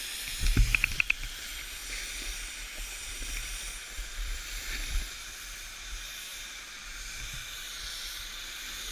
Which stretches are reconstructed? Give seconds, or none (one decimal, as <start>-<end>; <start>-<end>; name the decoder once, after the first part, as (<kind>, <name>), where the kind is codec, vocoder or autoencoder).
0.0-8.9 (vocoder, BigVGAN v2)